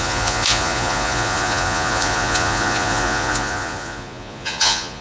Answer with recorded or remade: remade